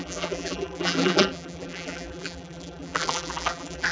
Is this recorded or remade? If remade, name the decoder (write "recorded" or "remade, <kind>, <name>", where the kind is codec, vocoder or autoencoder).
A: remade, vocoder, BigVGAN v2